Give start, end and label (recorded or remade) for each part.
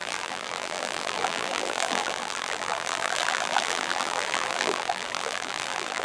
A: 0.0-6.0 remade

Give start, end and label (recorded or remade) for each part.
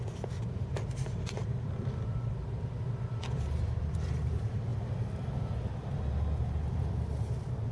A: 0.0-1.4 recorded; 1.4-4.3 remade; 4.3-4.7 recorded; 4.7-6.9 remade; 6.9-7.7 recorded